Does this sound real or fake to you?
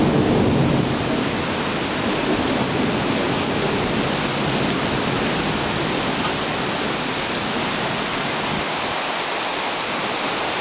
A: real